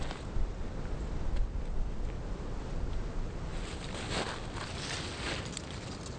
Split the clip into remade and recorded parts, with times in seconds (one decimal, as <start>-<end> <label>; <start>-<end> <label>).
0.0-6.2 recorded